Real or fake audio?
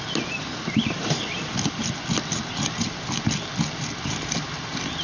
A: real